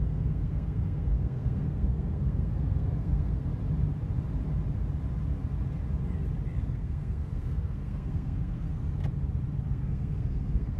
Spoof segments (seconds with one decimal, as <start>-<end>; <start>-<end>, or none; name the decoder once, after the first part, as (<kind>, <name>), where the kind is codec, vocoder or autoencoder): 0.0-3.5 (codec, SNAC); 6.6-8.8; 9.7-10.8